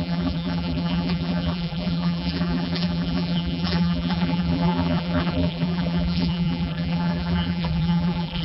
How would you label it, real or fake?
fake